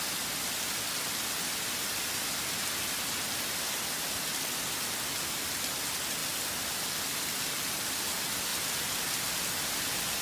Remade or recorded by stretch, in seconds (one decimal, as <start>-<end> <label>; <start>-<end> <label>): 0.0-10.2 recorded